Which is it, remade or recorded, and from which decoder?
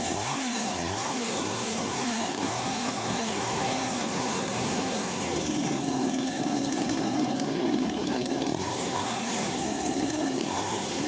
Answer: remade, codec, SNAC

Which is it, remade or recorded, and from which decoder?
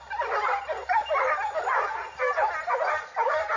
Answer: recorded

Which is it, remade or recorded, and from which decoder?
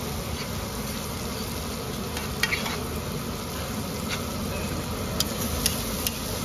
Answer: recorded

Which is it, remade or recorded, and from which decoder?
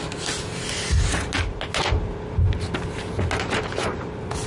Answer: recorded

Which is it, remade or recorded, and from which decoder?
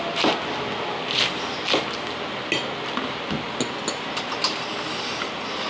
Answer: recorded